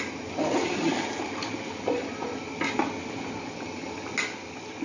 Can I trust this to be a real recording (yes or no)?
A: yes